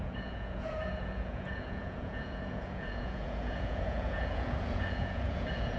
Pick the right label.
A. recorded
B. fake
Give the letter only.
B